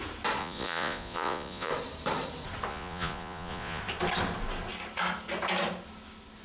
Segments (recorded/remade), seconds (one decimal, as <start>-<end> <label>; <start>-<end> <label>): 0.0-0.4 recorded; 0.4-1.7 remade; 1.7-2.7 recorded; 2.7-3.8 remade; 3.8-6.4 recorded